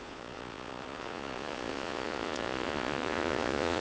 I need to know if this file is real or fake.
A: fake